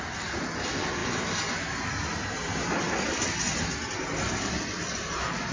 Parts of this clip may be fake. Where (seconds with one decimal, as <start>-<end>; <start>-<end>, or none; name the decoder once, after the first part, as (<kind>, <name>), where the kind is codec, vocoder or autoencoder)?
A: none